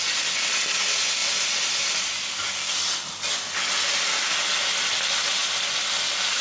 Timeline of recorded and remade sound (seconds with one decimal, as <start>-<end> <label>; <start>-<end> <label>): 0.0-6.4 recorded

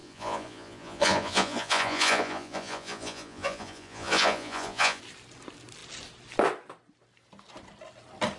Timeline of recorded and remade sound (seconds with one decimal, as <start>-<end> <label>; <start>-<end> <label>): 0.0-5.0 remade; 5.0-8.4 recorded

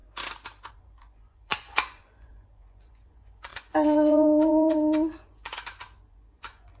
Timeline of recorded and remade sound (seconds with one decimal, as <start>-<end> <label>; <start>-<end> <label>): 0.0-0.7 recorded; 0.7-6.8 remade

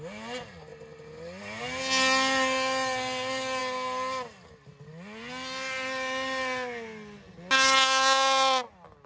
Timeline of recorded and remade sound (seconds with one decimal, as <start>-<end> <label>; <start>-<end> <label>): 0.0-9.1 recorded

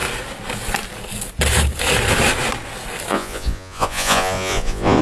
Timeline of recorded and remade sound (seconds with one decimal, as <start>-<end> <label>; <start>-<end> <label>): 0.0-3.1 recorded; 3.1-5.0 remade

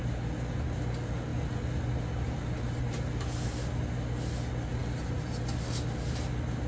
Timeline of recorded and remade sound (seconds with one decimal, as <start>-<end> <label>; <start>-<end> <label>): 0.0-6.7 recorded